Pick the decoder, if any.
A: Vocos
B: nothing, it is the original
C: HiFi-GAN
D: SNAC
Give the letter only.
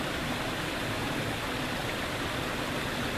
B